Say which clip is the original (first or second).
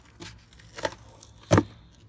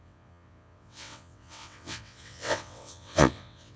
first